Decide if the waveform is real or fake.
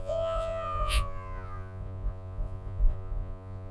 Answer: fake